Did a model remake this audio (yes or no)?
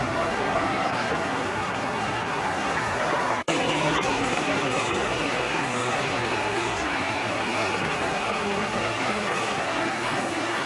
yes